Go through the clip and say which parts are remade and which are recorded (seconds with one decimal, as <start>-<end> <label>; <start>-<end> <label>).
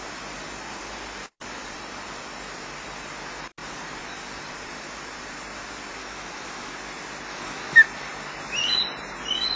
0.0-6.0 recorded; 6.0-6.7 remade; 6.7-7.3 recorded; 7.3-7.8 remade; 7.8-9.6 recorded